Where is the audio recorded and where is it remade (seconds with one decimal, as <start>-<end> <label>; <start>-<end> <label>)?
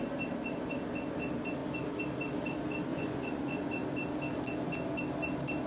0.0-2.9 recorded; 2.9-3.7 remade; 3.7-5.7 recorded